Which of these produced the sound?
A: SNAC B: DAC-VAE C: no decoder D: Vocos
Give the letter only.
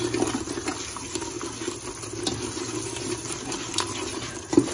C